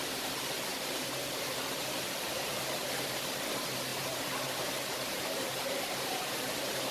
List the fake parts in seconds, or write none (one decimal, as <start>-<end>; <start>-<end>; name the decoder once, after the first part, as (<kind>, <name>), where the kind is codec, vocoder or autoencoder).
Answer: 0.7-3.2 (vocoder, BigVGAN v2); 3.9-6.9